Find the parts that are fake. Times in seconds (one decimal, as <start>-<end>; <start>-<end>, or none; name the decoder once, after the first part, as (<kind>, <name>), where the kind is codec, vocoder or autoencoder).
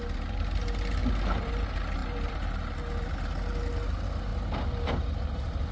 1.0-1.5 (vocoder, BigVGAN v2); 2.0-2.6; 4.3-5.0